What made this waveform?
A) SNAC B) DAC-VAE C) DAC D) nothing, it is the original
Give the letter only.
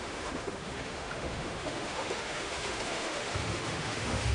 B